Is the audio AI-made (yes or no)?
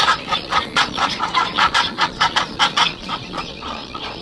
yes